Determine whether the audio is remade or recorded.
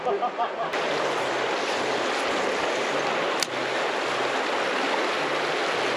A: recorded